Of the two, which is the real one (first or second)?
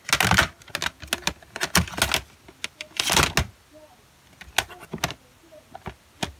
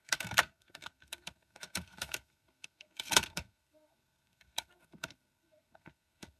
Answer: first